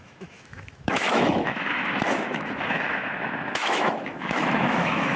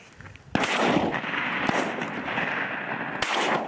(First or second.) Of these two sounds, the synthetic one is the first